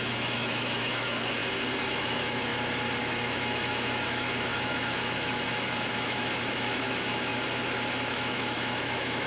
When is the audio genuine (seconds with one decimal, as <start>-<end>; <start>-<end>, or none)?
1.4-1.9; 2.5-3.0; 7.3-7.9